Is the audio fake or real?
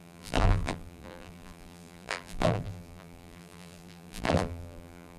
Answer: fake